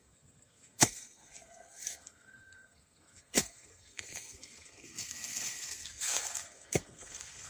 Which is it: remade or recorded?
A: remade